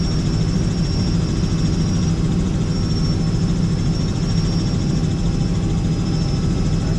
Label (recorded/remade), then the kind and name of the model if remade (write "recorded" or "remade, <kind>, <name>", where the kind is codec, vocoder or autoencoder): recorded